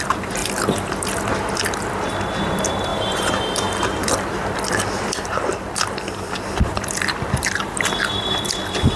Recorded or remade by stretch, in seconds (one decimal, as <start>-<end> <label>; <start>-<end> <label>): 0.0-0.4 remade; 0.4-2.5 recorded; 2.5-9.0 remade

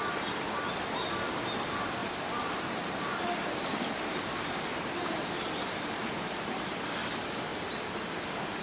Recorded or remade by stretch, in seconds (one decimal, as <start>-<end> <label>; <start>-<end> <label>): 0.0-2.0 recorded; 2.0-6.6 remade; 6.6-8.6 recorded

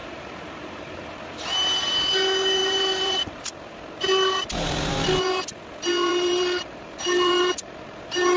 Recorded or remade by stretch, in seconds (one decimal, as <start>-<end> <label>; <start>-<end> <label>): 0.0-1.1 remade; 1.1-2.6 recorded; 2.6-3.4 remade; 3.4-6.1 recorded; 6.1-8.4 remade

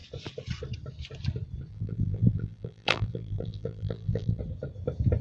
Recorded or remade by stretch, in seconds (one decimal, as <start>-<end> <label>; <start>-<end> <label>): 0.0-1.7 recorded; 1.7-4.4 remade; 4.4-5.2 recorded

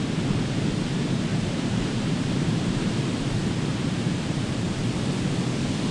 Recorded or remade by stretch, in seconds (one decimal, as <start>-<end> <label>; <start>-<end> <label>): 0.0-1.3 recorded; 1.3-2.9 remade; 2.9-3.7 recorded; 3.7-4.8 remade; 4.8-5.9 recorded

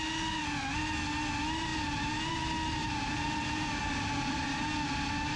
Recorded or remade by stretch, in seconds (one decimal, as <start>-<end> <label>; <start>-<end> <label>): 0.0-2.8 recorded; 2.8-4.6 remade; 4.6-5.4 recorded